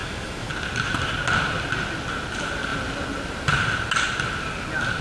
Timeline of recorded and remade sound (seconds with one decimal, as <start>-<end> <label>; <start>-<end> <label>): 0.0-0.5 remade; 0.5-5.0 recorded